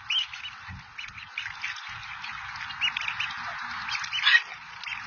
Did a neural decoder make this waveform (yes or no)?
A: no